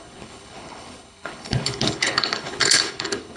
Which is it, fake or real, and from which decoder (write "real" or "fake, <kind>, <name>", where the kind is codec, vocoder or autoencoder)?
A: fake, codec, HILCodec